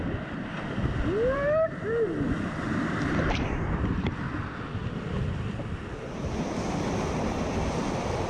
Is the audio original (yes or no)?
yes